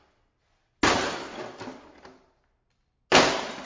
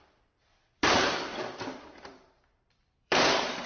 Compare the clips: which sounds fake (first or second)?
second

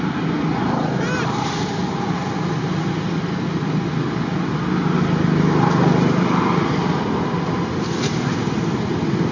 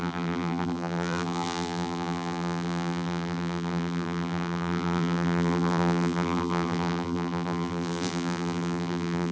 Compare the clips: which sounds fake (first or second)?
second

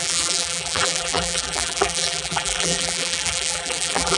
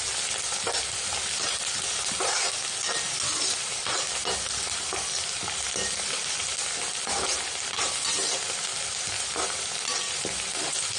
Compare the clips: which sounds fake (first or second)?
first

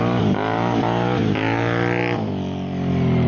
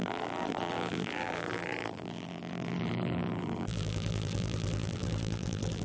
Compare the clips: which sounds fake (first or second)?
second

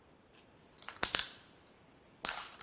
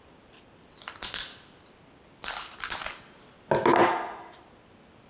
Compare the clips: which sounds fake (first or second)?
first